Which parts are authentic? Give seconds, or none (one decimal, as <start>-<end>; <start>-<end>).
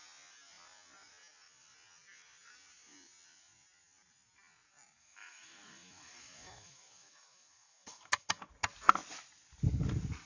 0.0-5.0; 8.5-10.3